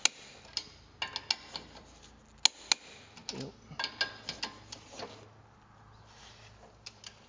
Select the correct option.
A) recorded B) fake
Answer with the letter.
A